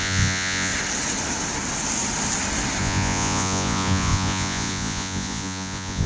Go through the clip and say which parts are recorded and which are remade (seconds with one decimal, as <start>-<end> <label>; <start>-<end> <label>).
0.0-0.7 remade; 0.7-2.8 recorded; 2.8-6.1 remade